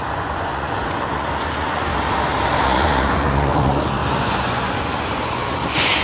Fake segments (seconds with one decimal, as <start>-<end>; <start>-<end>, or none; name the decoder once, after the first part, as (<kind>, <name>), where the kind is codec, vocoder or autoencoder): 0.0-1.9 (vocoder, Vocos); 2.6-6.0